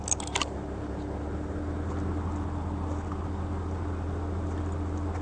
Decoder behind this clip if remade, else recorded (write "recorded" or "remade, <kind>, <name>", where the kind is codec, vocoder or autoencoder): recorded